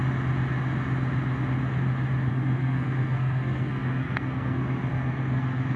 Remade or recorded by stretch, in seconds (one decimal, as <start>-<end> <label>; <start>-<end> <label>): 0.0-2.3 recorded; 2.3-5.8 remade